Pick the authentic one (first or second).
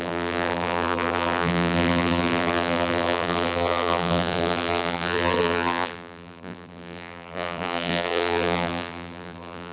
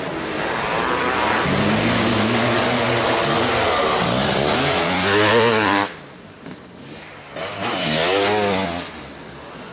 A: second